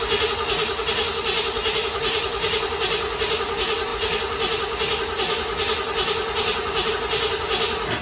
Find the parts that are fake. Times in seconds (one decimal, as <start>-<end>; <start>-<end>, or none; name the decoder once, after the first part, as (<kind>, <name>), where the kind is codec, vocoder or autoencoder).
none